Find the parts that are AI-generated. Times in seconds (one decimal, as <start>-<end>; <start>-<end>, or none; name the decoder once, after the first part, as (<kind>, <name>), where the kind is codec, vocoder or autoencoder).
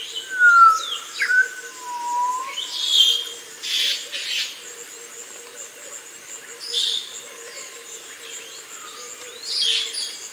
7.5-8.5 (vocoder, BigVGAN v2)